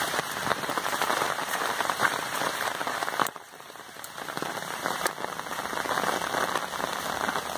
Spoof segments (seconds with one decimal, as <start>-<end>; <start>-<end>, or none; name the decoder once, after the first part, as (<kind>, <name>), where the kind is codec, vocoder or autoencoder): 0.5-5.1 (vocoder, BigVGAN v2)